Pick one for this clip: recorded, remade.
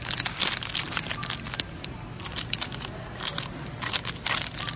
recorded